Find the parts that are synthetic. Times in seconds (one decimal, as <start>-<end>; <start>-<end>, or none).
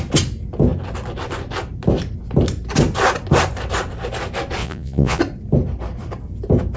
4.6-5.2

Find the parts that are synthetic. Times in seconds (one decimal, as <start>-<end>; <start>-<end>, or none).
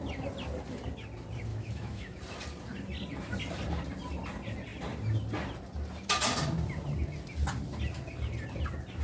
1.5-2.2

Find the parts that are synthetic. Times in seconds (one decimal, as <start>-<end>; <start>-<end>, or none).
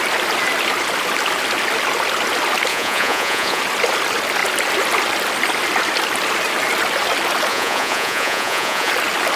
2.7-3.6; 7.5-8.9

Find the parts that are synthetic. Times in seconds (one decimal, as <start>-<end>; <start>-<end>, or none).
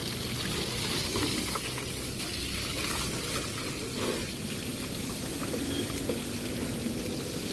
4.2-5.4